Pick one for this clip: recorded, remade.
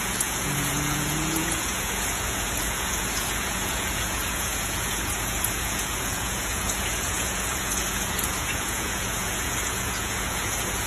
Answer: remade